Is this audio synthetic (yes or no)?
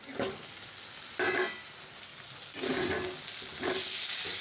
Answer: no